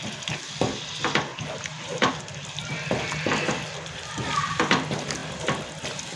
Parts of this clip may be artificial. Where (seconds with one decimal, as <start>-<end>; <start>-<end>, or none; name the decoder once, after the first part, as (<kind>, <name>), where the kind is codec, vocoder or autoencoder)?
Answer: 1.3-2.1 (vocoder, BigVGAN v2)